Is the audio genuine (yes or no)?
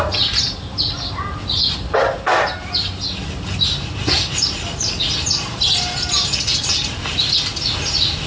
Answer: yes